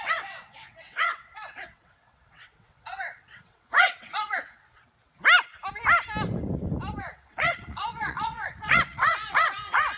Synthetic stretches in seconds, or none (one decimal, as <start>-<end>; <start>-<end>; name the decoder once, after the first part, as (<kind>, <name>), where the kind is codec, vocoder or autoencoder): 0.0-4.8 (vocoder, WaveNeXt); 7.0-10.0